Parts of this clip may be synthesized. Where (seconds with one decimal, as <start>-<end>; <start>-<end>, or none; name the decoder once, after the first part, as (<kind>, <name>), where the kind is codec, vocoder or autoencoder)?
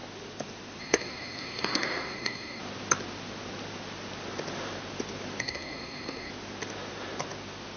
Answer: 0.8-2.6 (codec, SNAC); 5.4-6.3